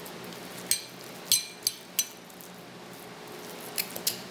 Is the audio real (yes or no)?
yes